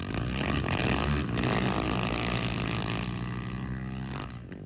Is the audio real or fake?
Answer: real